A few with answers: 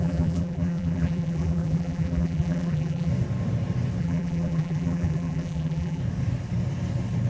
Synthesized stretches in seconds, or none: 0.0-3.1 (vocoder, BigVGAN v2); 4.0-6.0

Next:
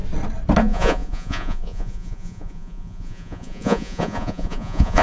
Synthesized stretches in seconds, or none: 0.6-5.0 (vocoder, Vocos)

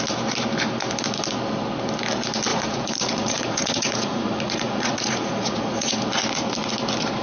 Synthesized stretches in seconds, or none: 2.5-5.9 (vocoder, Vocos)

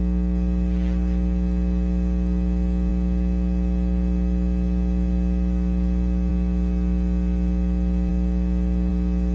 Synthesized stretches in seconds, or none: none